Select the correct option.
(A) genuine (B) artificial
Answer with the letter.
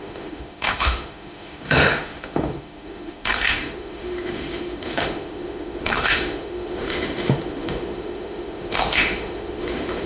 B